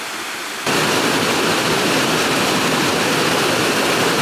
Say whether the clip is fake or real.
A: real